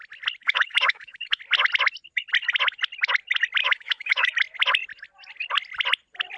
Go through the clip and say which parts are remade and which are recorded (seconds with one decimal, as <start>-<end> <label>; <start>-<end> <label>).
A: 0.0-0.4 recorded; 0.4-1.4 remade; 1.4-3.6 recorded; 3.6-4.3 remade; 4.3-6.4 recorded